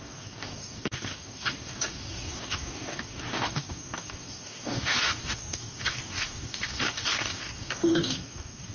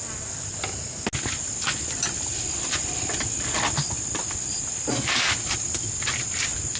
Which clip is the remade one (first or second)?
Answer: first